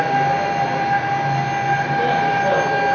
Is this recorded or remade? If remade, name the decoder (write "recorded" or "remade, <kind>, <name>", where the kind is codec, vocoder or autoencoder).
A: recorded